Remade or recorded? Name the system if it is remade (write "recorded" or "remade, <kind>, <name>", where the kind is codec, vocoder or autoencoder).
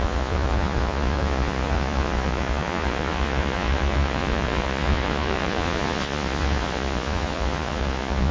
remade, vocoder, Vocos